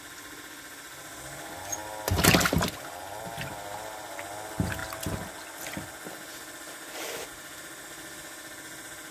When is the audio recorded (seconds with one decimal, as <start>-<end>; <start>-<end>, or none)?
0.0-9.1